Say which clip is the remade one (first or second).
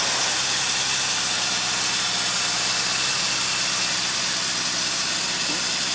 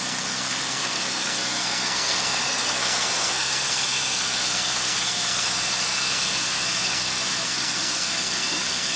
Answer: second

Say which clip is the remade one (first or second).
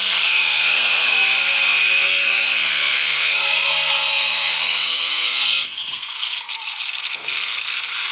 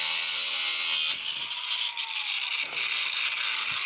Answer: first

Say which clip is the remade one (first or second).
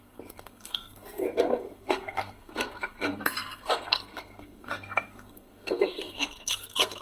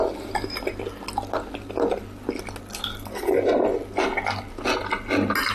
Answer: first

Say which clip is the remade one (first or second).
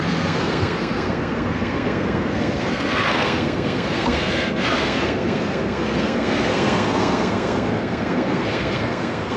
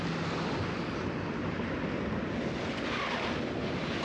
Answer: first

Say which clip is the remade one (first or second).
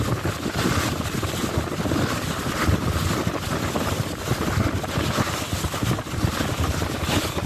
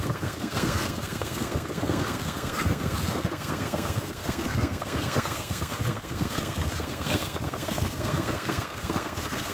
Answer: second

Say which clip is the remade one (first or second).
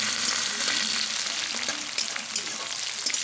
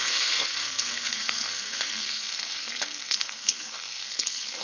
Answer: second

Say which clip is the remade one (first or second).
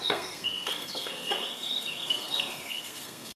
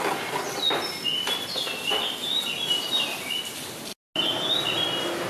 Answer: first